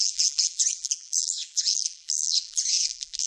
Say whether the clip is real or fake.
fake